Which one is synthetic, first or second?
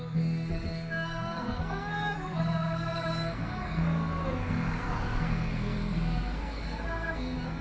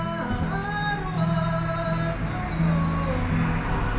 first